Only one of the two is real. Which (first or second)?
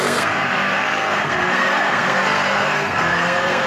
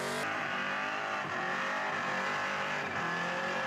second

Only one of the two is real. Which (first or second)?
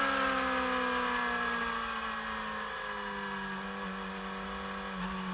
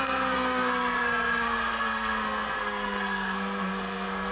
first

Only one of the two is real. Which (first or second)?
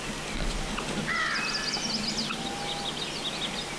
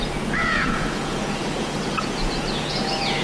first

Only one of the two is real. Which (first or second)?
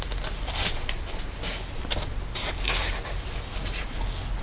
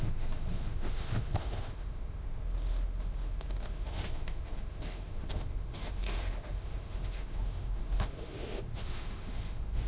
first